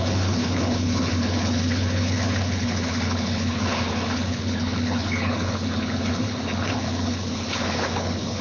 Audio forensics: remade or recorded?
remade